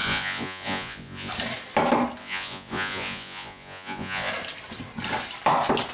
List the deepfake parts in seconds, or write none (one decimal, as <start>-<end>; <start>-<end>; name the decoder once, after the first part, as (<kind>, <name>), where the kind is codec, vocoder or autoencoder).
0.0-1.3 (vocoder, Vocos); 2.2-4.3